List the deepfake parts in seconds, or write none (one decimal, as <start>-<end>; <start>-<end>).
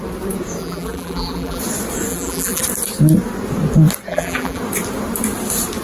0.6-1.6; 2.1-2.6; 4.1-4.6